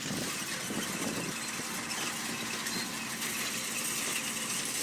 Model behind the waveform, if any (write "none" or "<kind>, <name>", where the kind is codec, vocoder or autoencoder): none